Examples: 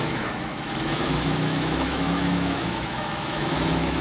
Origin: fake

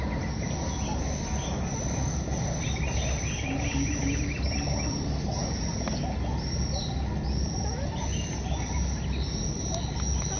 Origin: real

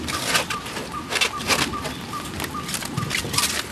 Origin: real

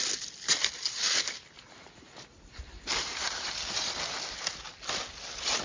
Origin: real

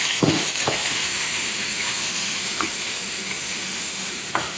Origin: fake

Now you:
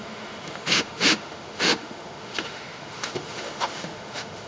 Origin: fake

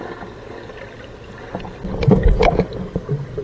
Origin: real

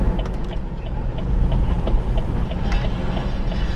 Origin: real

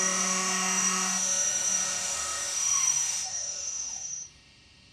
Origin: fake